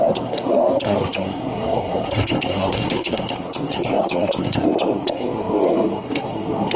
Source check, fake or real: fake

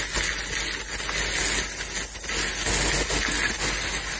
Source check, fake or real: real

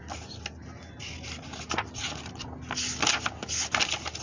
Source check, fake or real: real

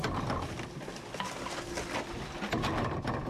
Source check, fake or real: real